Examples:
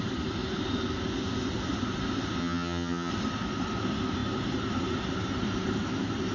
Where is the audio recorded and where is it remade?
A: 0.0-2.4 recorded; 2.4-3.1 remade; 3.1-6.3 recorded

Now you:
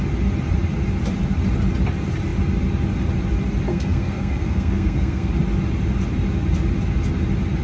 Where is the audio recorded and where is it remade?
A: 0.0-3.7 recorded; 3.7-5.3 remade; 5.3-7.6 recorded